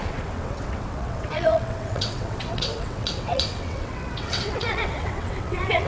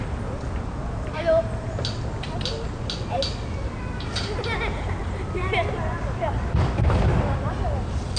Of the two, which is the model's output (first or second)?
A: first